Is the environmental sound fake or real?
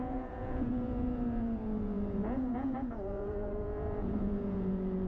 fake